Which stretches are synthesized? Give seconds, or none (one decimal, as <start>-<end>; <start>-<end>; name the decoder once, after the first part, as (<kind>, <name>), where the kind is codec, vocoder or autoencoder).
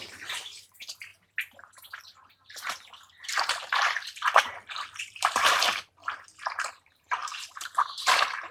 0.0-1.1 (vocoder, BigVGAN v2); 2.0-6.0; 6.7-8.5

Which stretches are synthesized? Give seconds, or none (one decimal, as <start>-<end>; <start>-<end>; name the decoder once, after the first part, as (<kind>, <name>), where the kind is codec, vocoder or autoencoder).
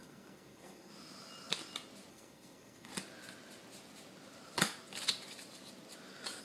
0.0-0.9 (codec, SNAC); 2.1-2.9